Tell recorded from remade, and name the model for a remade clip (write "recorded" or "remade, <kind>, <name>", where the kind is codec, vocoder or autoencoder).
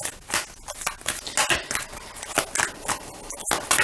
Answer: recorded